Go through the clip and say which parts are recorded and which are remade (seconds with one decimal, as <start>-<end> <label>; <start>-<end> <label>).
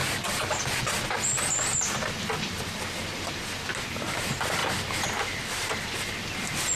0.0-6.8 recorded